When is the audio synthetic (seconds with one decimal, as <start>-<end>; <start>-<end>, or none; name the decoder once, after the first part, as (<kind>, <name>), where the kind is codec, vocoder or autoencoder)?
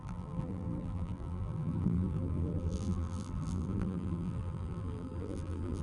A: 0.0-5.8 (vocoder, BigVGAN v2)